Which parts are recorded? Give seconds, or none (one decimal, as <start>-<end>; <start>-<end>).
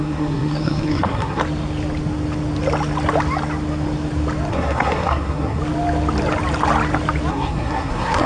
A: 1.4-4.5; 5.6-7.3